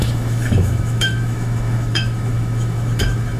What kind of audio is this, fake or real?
fake